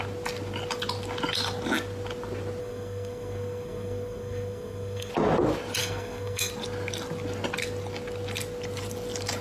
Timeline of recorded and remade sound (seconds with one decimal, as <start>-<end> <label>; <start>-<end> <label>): 0.0-2.6 recorded; 2.6-5.1 remade; 5.1-5.8 recorded; 5.8-6.5 remade; 6.5-9.4 recorded